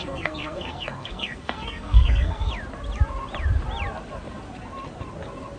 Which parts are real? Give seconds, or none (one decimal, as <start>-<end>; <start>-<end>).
2.5-5.6